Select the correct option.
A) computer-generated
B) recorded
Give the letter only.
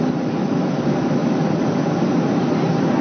B